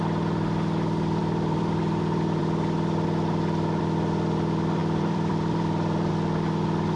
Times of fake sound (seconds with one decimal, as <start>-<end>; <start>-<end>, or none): 1.2-1.8; 4.8-6.1